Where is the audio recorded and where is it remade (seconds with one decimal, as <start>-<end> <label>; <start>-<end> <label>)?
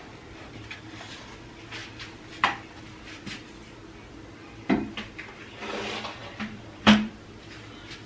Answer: 0.0-1.8 remade; 1.8-4.1 recorded; 4.1-8.1 remade